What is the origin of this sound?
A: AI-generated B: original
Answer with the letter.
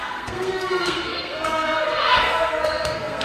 A